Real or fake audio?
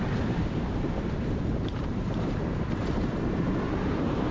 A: fake